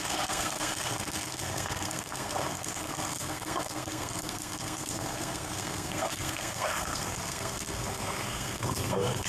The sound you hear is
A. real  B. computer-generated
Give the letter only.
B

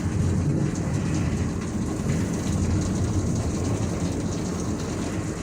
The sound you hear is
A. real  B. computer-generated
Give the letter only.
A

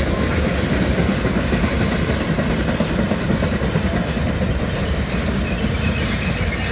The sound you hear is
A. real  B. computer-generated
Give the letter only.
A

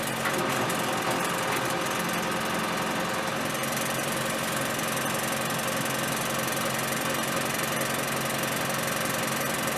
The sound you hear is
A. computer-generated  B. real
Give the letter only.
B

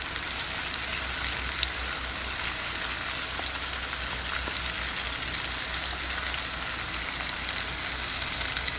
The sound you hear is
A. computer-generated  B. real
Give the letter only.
B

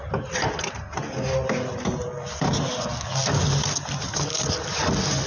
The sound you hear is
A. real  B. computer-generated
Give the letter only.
A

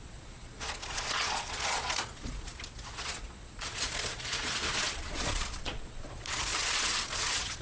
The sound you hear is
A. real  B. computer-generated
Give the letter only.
B